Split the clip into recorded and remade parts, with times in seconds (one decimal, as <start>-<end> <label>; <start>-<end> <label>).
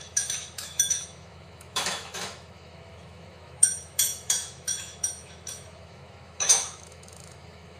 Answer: 0.0-7.8 remade